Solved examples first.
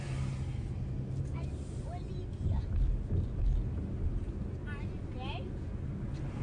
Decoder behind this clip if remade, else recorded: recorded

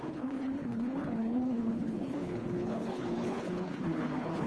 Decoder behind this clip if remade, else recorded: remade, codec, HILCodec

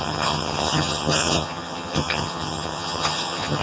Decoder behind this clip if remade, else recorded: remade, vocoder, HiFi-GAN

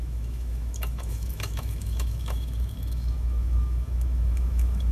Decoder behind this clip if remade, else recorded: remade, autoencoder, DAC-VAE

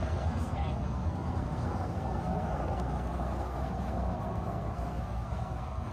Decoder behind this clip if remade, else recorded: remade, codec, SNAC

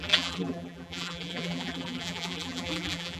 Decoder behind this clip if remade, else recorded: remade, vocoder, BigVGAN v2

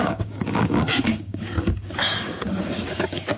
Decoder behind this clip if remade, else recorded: remade, codec, DAC